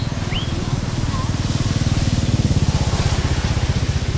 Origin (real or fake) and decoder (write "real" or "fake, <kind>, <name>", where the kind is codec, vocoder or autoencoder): real